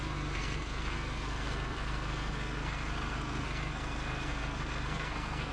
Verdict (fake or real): fake